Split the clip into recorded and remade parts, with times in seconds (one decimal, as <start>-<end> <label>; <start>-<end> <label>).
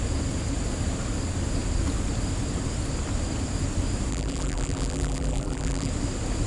0.0-4.1 recorded; 4.1-5.9 remade; 5.9-6.5 recorded